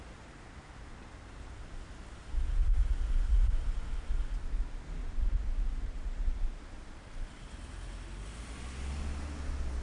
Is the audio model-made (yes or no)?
no